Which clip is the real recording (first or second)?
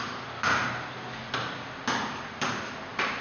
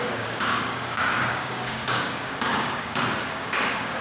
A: first